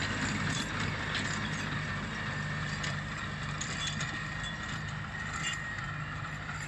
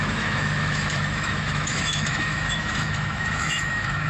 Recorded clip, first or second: first